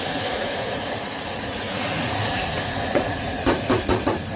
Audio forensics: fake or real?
fake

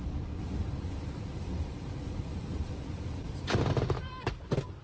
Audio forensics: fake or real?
fake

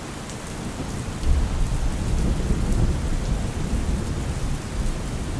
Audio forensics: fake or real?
real